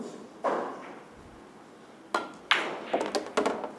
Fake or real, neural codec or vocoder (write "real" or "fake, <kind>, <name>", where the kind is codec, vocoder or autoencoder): real